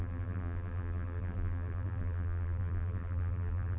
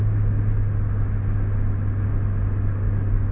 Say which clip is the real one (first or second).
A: second